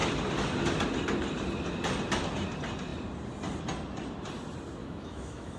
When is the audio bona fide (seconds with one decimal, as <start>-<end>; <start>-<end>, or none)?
0.0-4.8